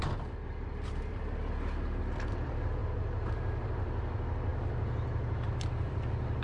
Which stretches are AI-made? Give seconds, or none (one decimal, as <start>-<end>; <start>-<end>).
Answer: 0.0-2.8; 3.3-4.5; 5.7-6.4